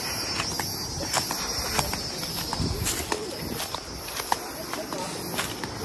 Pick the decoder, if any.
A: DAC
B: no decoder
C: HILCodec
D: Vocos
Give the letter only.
B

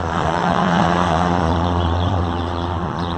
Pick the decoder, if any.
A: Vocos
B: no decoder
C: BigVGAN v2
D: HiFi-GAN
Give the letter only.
A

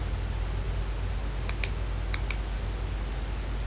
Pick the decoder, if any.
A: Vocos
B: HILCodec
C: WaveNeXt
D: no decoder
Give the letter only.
D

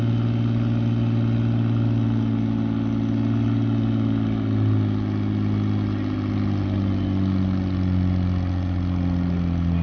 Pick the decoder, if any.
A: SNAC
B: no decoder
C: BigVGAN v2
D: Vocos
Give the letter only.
B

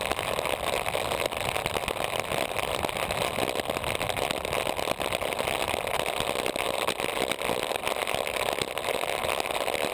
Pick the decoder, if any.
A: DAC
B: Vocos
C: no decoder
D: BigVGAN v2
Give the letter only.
C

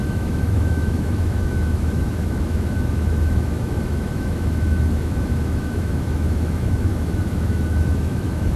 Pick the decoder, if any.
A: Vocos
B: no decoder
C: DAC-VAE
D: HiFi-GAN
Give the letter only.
C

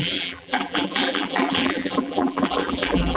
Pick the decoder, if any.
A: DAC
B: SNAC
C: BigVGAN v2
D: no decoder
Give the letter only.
C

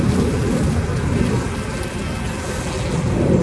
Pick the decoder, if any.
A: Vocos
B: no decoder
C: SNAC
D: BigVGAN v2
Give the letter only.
B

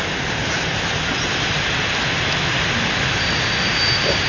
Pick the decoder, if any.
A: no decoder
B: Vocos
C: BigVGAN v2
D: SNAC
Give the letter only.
A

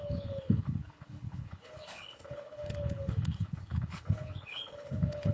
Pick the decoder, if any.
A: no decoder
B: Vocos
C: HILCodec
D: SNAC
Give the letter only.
C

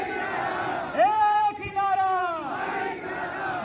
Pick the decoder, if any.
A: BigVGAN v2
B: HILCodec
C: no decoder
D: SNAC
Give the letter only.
A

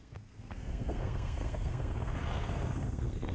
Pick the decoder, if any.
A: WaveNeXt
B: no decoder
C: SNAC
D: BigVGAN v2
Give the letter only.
C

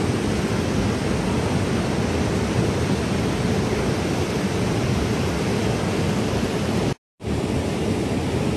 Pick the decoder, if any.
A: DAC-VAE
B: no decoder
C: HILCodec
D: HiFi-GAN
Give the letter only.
B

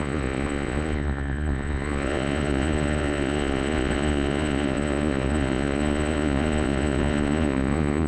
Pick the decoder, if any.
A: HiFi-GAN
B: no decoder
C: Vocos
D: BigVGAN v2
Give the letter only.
C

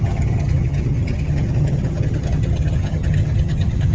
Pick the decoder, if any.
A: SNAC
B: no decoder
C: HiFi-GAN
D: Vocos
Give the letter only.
C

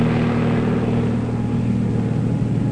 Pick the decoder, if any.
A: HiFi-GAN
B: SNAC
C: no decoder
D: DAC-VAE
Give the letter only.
C